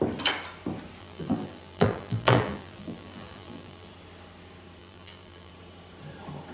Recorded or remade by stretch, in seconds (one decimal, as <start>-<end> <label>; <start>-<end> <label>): 0.0-1.0 recorded; 1.0-3.9 remade; 3.9-4.8 recorded; 4.8-5.5 remade; 5.5-6.5 recorded